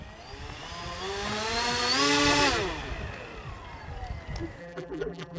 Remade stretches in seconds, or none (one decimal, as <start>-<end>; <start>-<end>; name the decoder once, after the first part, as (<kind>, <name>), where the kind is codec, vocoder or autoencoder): 4.6-5.4 (vocoder, BigVGAN v2)